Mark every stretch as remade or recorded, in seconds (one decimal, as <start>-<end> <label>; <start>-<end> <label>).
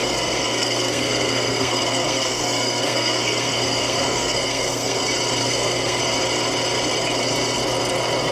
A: 0.0-5.0 remade; 5.0-5.4 recorded; 5.4-6.0 remade; 6.0-8.3 recorded